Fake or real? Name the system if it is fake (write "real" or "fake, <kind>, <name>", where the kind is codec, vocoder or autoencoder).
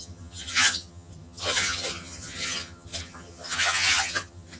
fake, vocoder, HiFi-GAN